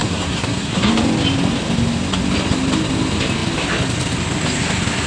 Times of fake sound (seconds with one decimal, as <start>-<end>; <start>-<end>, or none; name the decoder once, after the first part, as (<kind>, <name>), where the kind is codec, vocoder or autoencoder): 0.0-0.9 (codec, SNAC)

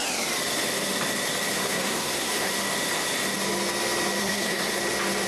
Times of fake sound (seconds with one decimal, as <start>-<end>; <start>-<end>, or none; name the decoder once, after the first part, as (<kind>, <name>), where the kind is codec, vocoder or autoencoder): 1.6-2.5 (codec, SNAC); 4.2-4.8

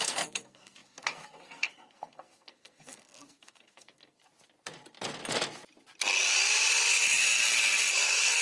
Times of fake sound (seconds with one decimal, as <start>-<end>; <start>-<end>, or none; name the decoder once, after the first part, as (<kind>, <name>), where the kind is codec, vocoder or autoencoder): 0.0-4.2 (codec, SNAC); 7.9-8.4

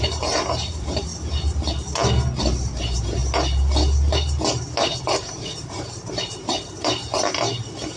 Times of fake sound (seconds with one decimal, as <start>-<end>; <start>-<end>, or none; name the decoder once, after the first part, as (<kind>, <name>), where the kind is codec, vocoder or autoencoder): 0.0-1.1 (vocoder, BigVGAN v2); 2.4-3.2; 5.3-8.0